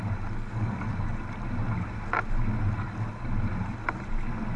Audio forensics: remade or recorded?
recorded